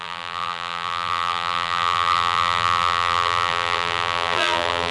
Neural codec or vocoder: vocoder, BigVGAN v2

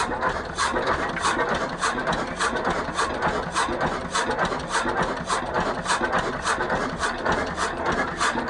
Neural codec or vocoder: none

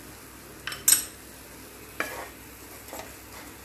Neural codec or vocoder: none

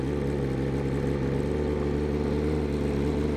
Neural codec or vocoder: none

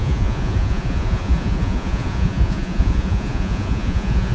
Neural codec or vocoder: vocoder, Vocos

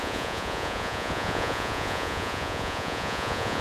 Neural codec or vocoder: vocoder, Vocos